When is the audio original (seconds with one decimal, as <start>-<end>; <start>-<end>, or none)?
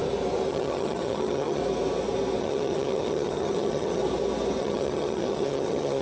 0.0-0.5; 1.6-2.4; 4.0-4.6